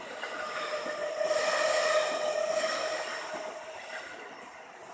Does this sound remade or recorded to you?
recorded